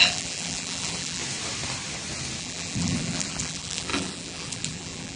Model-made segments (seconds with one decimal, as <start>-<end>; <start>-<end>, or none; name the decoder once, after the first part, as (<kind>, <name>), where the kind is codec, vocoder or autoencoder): 0.0-1.2 (vocoder, BigVGAN v2); 2.4-5.2